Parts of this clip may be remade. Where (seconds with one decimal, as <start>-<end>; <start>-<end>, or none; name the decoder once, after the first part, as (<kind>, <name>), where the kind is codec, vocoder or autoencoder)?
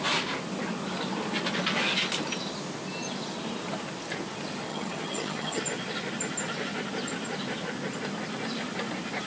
4.7-5.6 (vocoder, HiFi-GAN)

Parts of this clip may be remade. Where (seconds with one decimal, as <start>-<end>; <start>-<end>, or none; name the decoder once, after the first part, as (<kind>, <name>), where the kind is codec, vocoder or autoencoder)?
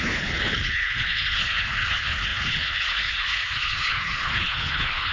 0.0-5.1 (codec, HILCodec)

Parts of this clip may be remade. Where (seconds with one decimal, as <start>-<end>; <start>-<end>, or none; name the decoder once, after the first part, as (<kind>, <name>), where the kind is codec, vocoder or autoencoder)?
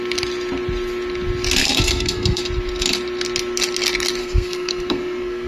1.6-2.4 (codec, SNAC); 4.2-5.5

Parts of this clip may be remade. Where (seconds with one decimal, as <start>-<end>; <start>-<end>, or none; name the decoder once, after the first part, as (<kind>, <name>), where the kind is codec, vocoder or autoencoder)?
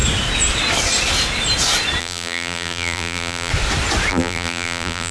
2.0-3.5 (vocoder, BigVGAN v2); 4.1-5.1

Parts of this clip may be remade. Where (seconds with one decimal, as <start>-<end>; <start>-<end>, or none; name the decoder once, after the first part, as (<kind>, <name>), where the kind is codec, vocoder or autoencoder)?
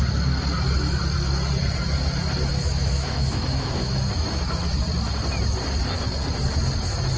2.5-4.4 (autoencoder, DAC-VAE)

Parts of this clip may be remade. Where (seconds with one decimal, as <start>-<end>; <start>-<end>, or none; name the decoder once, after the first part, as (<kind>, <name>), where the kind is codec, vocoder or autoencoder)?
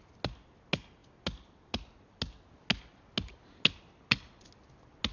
none